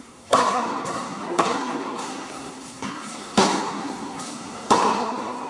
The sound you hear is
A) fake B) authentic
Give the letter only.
A